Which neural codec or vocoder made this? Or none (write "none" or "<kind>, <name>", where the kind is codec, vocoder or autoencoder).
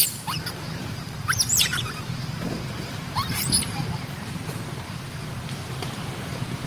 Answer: vocoder, BigVGAN v2